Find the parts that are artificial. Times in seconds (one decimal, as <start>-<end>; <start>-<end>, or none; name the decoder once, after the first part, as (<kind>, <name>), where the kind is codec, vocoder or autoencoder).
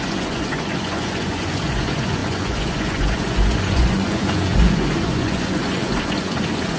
0.0-6.8 (vocoder, Vocos)